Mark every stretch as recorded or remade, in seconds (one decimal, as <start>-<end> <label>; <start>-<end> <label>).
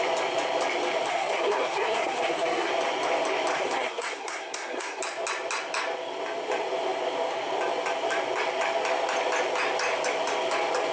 0.0-1.1 recorded; 1.1-2.7 remade; 2.7-3.5 recorded; 3.5-5.0 remade; 5.0-10.9 recorded